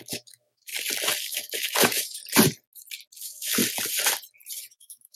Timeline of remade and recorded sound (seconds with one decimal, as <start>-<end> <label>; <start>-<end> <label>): 0.0-0.7 remade; 0.7-1.2 recorded; 1.2-2.2 remade; 2.2-3.2 recorded; 3.2-3.6 remade; 3.6-4.6 recorded; 4.6-5.2 remade